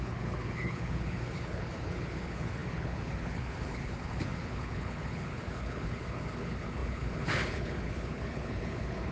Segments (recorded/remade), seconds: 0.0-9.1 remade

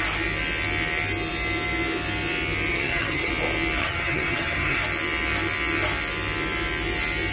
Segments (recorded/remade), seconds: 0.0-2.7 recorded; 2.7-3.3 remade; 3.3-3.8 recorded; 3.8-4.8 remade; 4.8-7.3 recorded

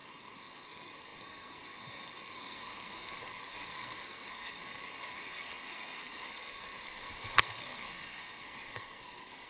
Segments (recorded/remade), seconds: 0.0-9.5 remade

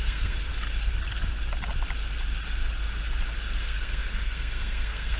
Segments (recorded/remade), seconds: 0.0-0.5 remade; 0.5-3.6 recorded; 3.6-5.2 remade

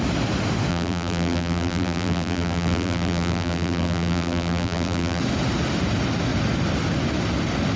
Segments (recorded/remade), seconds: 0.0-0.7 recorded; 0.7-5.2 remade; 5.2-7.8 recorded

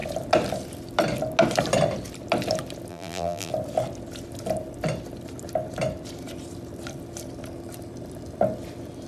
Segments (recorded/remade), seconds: 0.0-2.9 recorded; 2.9-3.5 remade; 3.5-9.1 recorded

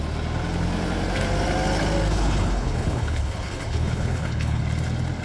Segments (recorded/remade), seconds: 0.0-2.1 recorded; 2.1-4.6 remade; 4.6-5.2 recorded

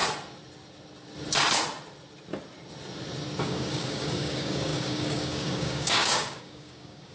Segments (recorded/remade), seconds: 0.0-3.4 recorded; 3.4-7.1 remade